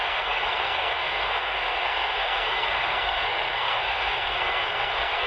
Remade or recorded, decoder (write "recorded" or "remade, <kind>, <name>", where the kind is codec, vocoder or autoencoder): remade, codec, SNAC